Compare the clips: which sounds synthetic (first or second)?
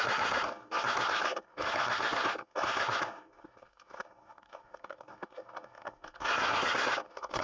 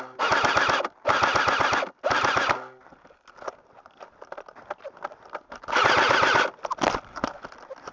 first